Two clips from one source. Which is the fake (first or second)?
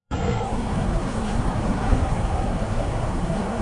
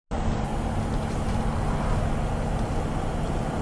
first